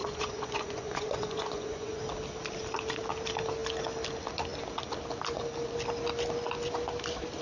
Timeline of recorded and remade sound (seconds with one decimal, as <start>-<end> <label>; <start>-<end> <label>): 0.0-2.0 remade; 2.0-7.4 recorded